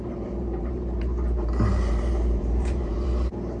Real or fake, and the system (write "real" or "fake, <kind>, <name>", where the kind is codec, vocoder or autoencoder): fake, vocoder, BigVGAN v2